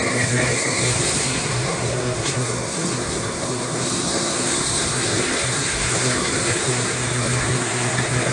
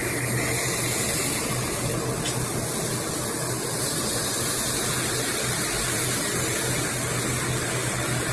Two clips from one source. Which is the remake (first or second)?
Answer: first